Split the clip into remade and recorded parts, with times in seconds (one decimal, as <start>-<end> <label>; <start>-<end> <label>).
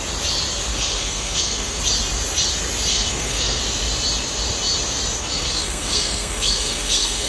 0.0-0.7 recorded; 0.7-1.8 remade; 1.8-2.9 recorded; 2.9-3.6 remade; 3.6-5.2 recorded; 5.2-7.3 remade